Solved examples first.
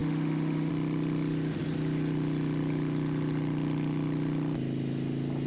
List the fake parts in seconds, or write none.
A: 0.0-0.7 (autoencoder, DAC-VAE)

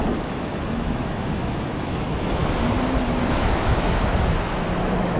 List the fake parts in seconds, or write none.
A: 0.0-2.4 (autoencoder, DAC-VAE); 3.2-5.2

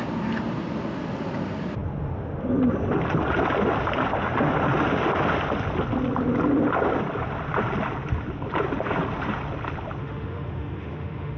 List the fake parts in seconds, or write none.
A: 10.0-11.4 (autoencoder, DAC-VAE)